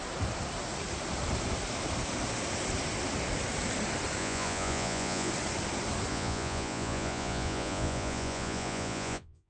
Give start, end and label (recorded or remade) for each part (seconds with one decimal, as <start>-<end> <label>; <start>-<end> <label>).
0.0-4.2 recorded; 4.2-5.3 remade; 5.3-6.1 recorded; 6.1-9.5 remade